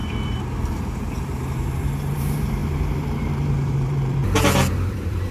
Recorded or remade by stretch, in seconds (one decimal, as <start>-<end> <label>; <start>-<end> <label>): 0.0-4.2 remade; 4.2-4.7 recorded; 4.7-5.3 remade